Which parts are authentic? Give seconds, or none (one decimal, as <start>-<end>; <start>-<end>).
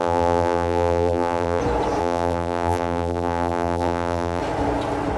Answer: 1.6-2.0; 4.4-5.2